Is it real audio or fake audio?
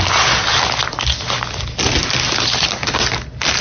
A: real